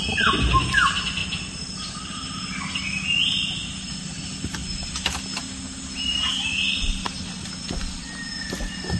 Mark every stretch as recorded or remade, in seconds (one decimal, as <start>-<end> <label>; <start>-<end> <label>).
0.0-9.0 recorded